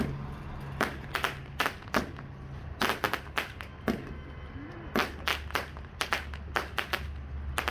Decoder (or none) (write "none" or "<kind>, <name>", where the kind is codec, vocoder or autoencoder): none